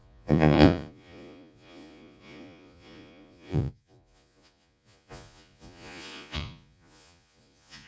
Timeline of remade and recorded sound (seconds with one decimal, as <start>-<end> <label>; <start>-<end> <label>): 0.0-7.9 remade